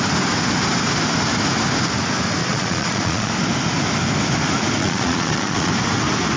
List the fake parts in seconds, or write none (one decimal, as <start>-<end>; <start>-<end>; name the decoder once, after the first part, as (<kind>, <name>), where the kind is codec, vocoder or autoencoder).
2.4-3.3 (vocoder, Vocos); 4.8-5.7